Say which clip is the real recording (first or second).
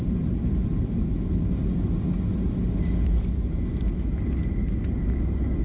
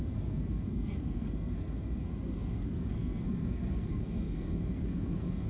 first